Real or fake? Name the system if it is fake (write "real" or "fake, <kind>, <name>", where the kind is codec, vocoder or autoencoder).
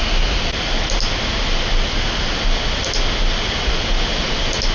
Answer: real